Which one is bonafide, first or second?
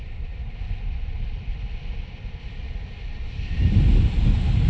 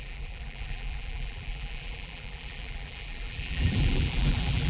first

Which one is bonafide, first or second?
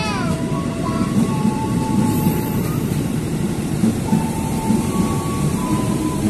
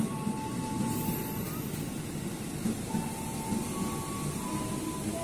second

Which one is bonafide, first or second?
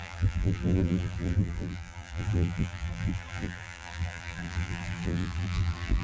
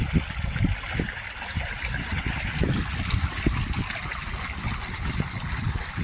second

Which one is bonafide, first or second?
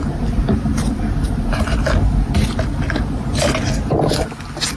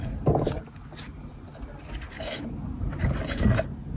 first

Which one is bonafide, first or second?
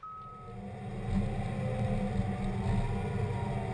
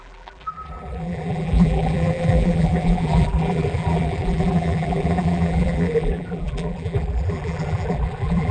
first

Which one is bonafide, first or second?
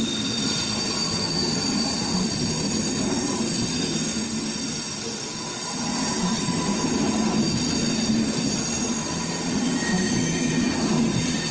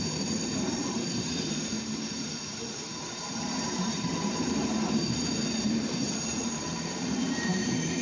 first